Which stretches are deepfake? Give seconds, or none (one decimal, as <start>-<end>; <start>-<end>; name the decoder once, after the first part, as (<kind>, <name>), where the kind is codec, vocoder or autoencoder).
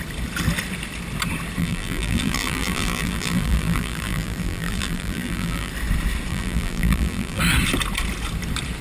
1.6-5.7 (vocoder, BigVGAN v2); 6.3-7.4